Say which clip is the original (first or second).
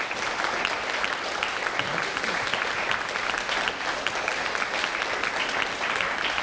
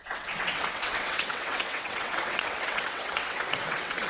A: first